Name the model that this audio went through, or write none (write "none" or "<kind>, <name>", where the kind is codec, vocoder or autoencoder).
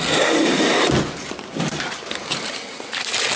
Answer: none